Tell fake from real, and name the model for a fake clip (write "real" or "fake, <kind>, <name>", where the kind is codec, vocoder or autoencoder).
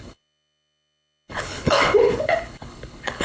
fake, codec, HILCodec